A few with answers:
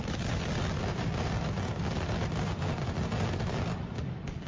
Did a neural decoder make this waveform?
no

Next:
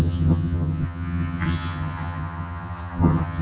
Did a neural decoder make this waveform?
yes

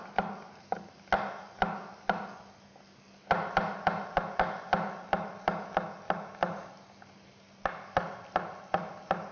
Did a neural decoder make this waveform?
no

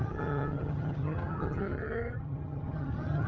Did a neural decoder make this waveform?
yes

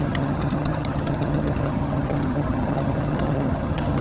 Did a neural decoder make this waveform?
yes